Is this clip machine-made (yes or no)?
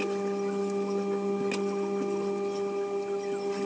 no